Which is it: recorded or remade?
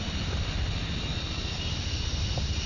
recorded